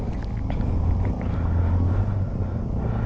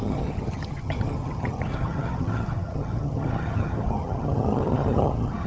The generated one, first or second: second